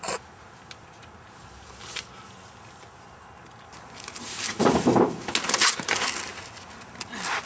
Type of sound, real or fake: real